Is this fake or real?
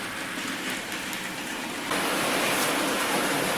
real